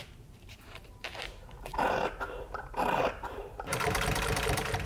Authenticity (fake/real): fake